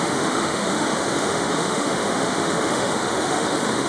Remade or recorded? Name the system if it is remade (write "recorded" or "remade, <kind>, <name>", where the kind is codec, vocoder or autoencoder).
remade, autoencoder, DAC-VAE